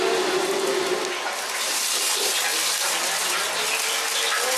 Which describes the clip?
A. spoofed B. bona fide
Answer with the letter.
B